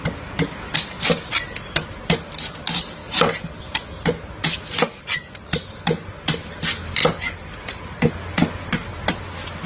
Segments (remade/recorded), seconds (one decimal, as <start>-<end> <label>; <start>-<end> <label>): 0.0-9.7 recorded